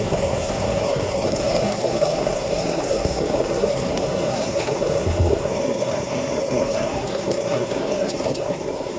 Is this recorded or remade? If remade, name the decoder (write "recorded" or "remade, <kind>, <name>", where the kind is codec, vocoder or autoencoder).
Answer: remade, codec, SNAC